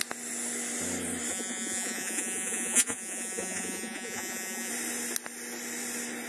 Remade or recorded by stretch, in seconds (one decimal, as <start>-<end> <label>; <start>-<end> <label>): 0.0-1.3 recorded; 1.3-4.7 remade; 4.7-6.3 recorded